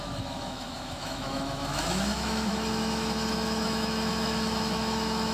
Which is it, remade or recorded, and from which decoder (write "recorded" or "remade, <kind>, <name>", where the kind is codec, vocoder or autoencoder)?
remade, autoencoder, DAC-VAE